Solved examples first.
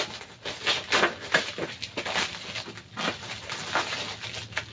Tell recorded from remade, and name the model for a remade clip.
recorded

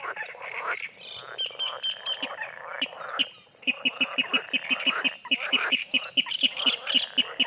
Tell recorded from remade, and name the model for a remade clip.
recorded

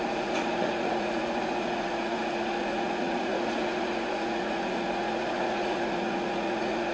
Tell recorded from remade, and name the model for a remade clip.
remade, vocoder, Vocos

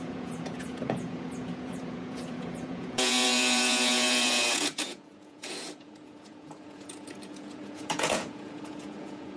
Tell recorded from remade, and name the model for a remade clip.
remade, vocoder, Vocos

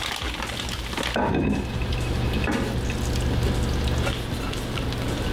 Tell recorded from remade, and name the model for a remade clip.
recorded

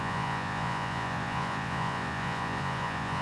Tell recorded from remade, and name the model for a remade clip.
remade, vocoder, Vocos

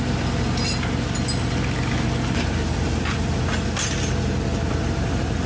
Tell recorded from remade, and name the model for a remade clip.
recorded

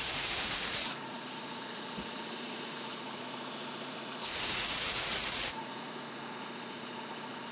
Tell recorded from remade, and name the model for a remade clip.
remade, vocoder, Vocos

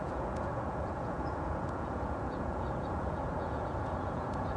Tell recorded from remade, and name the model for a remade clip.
remade, vocoder, Vocos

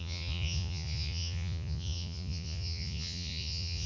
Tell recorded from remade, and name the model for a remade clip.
remade, vocoder, Vocos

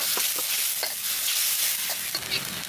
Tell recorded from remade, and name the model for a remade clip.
recorded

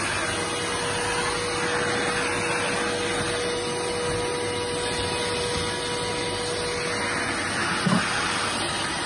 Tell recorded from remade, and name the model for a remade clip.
recorded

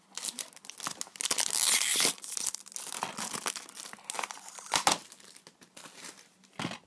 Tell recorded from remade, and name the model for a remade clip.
recorded